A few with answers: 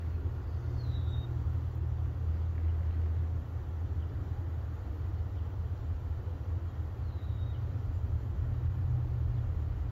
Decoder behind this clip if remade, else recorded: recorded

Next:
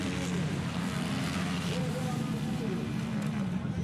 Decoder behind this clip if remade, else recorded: recorded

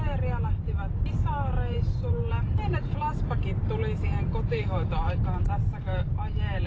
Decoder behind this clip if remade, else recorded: remade, vocoder, BigVGAN v2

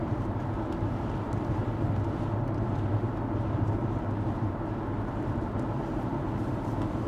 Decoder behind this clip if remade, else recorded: remade, vocoder, BigVGAN v2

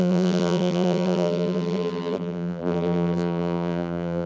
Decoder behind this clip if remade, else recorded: remade, vocoder, BigVGAN v2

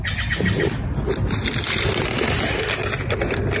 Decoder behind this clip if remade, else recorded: recorded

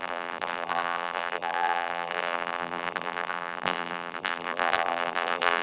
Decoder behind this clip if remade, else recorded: remade, vocoder, BigVGAN v2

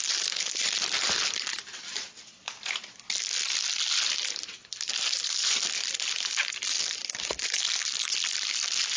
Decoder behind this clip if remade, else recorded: remade, vocoder, BigVGAN v2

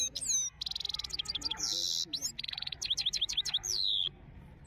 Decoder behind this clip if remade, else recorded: recorded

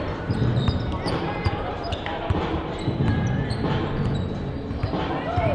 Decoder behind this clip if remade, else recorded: remade, vocoder, BigVGAN v2